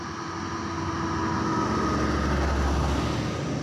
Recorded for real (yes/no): yes